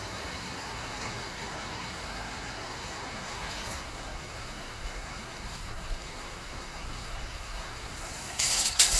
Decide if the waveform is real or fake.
fake